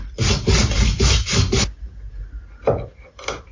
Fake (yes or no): no